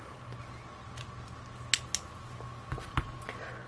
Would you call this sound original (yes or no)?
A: yes